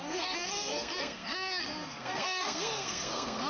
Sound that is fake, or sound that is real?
fake